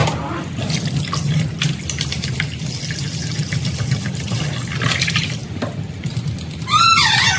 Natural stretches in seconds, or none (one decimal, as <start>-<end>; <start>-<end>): 0.0-3.4; 4.6-5.4; 6.1-7.4